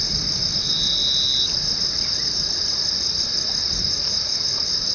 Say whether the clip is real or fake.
real